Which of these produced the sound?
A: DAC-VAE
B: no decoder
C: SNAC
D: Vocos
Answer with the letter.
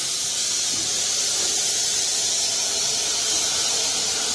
B